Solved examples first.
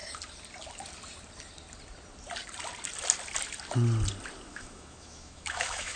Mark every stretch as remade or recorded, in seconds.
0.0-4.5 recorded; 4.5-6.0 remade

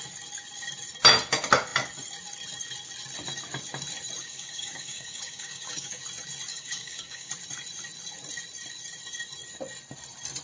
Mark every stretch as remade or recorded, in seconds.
0.0-4.2 recorded; 4.2-6.0 remade; 6.0-6.5 recorded; 6.5-7.3 remade; 7.3-10.4 recorded